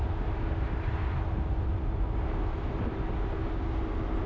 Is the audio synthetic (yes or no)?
no